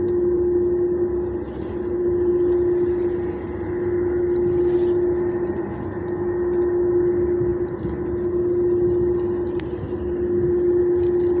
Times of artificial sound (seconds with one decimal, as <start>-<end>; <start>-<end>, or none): none